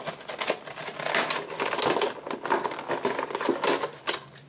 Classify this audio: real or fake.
real